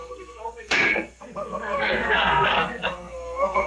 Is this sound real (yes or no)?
no